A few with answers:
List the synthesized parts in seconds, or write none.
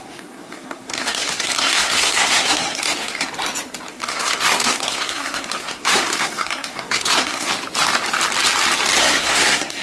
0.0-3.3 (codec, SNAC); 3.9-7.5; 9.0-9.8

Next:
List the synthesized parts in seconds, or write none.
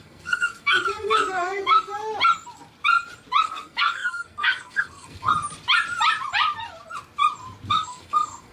0.0-1.9 (codec, SNAC); 3.4-5.3; 7.7-8.5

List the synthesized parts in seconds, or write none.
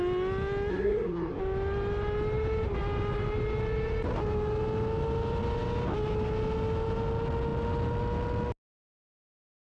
0.7-1.4 (codec, SNAC)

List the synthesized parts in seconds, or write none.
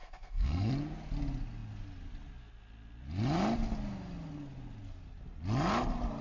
0.0-0.7 (codec, SNAC)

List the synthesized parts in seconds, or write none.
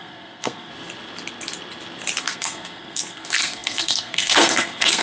0.0-0.7 (codec, SNAC); 2.2-5.0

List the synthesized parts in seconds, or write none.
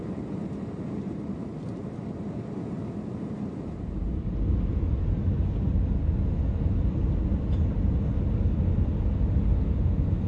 none